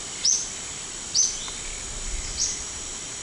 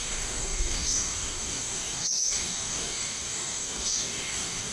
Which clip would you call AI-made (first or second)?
second